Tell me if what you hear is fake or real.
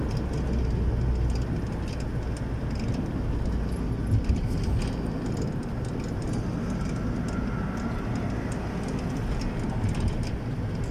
real